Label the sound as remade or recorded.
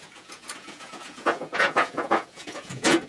remade